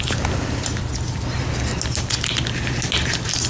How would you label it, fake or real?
real